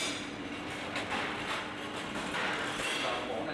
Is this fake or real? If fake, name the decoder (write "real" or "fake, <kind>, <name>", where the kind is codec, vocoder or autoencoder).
real